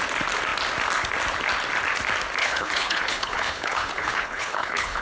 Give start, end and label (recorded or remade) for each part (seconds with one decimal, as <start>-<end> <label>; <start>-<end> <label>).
0.0-2.4 recorded; 2.4-5.0 remade